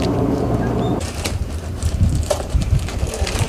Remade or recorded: remade